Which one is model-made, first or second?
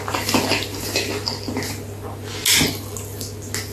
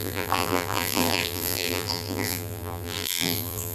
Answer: second